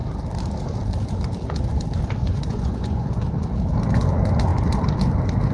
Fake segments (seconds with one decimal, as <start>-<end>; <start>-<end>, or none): 2.2-3.2

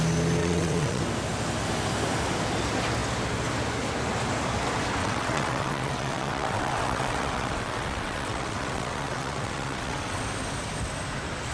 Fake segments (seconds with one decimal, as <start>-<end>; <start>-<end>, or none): 0.4-1.0; 5.0-10.2

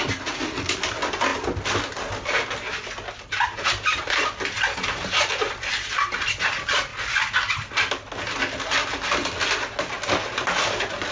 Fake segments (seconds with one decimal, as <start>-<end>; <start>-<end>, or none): none